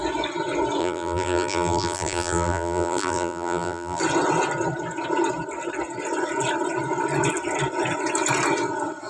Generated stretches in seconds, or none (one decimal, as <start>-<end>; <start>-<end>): 0.8-4.0